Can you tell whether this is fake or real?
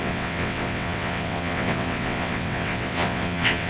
fake